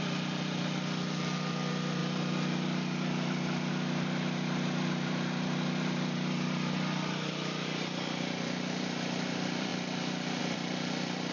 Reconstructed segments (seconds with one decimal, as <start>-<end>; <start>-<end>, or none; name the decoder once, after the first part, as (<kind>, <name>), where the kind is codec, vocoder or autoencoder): 0.0-11.3 (vocoder, BigVGAN v2)